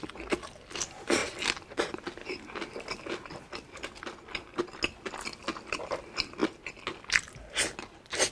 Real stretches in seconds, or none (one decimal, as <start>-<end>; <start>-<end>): 0.0-8.3

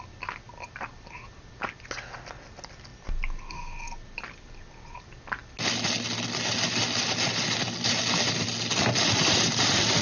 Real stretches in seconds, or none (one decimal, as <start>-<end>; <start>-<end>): 0.0-10.0

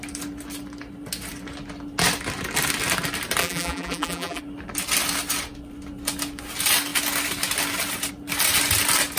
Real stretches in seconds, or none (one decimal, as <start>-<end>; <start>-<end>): 0.0-3.4; 4.4-9.2

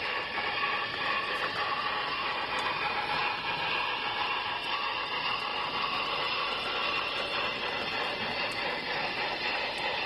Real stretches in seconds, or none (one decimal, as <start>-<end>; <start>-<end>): 3.2-5.0; 5.5-6.1